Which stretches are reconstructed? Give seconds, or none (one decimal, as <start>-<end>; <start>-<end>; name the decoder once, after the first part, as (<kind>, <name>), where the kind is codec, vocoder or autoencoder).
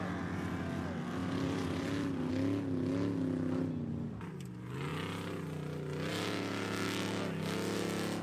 1.2-2.3 (vocoder, BigVGAN v2)